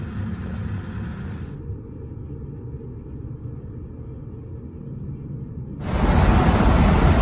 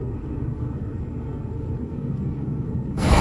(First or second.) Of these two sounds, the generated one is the second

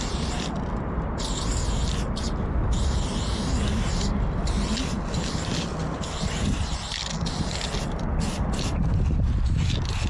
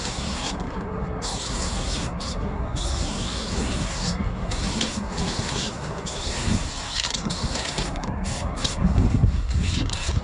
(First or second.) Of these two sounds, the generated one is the second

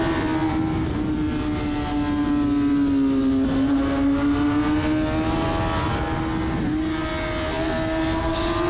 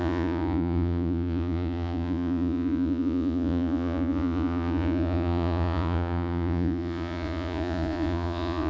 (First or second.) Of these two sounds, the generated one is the second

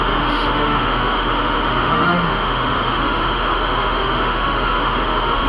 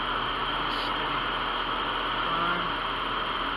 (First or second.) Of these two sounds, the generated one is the first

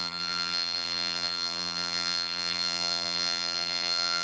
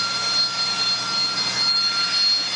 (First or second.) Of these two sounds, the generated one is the first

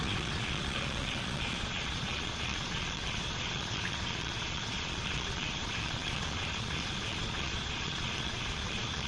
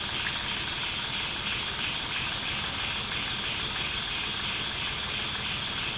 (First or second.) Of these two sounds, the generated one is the first